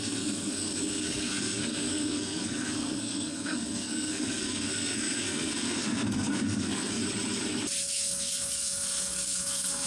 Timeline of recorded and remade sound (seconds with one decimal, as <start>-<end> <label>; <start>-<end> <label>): 0.0-7.0 remade; 7.0-7.8 recorded; 7.8-9.9 remade